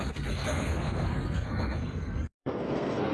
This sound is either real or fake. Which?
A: fake